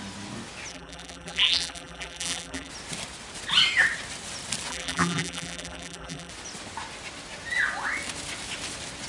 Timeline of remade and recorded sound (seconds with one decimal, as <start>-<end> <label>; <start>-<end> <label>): 0.0-0.7 recorded; 0.7-2.7 remade; 2.7-4.7 recorded; 4.7-6.3 remade; 6.3-9.1 recorded